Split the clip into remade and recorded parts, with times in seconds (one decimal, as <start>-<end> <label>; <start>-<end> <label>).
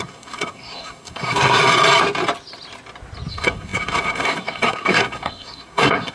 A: 0.0-1.6 remade; 1.6-3.3 recorded; 3.3-6.1 remade